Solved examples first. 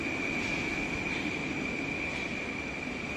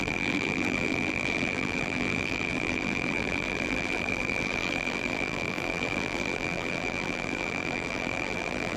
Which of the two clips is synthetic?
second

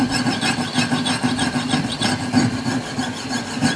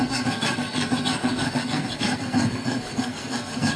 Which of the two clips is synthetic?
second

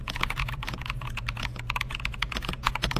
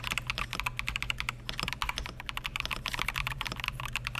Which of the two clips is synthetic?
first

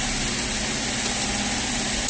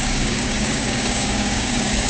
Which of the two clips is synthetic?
second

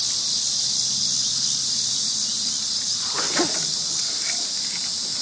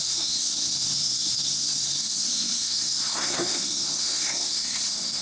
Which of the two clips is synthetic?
second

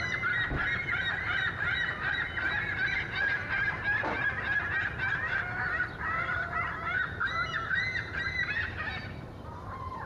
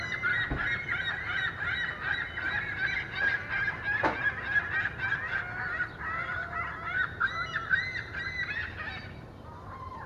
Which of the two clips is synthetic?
first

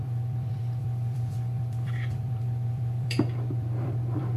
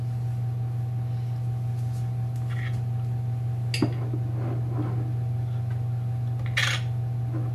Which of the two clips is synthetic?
first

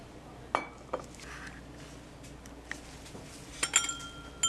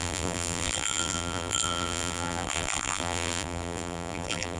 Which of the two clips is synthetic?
second